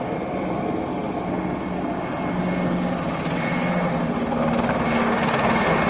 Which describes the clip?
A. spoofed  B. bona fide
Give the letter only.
B